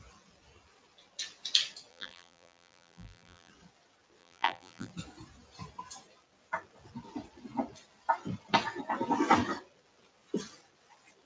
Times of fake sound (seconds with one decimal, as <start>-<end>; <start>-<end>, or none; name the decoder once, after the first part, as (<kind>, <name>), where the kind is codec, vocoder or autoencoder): 1.9-3.5 (vocoder, BigVGAN v2); 4.2-4.9